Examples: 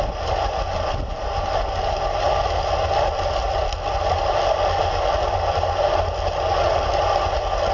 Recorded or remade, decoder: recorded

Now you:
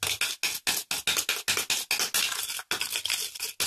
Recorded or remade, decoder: recorded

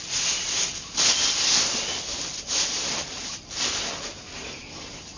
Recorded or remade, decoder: recorded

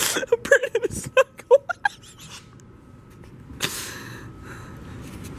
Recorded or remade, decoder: recorded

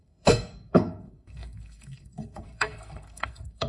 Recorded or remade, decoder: remade, codec, SNAC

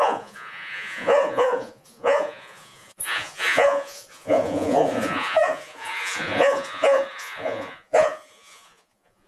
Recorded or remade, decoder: remade, vocoder, Vocos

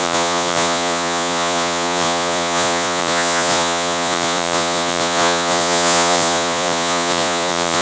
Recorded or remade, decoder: remade, vocoder, Vocos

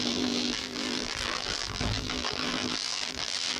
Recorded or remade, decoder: remade, vocoder, BigVGAN v2